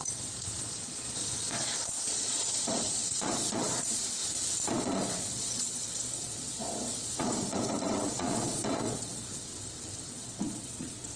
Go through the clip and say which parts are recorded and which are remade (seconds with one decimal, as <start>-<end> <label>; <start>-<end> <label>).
0.0-4.2 remade; 4.2-4.7 recorded; 4.7-9.5 remade; 9.5-10.1 recorded; 10.1-11.2 remade